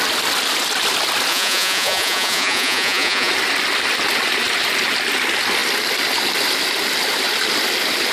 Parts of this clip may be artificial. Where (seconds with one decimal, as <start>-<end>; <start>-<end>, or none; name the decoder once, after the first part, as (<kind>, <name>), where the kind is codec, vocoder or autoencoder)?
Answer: 1.3-3.3 (vocoder, Vocos)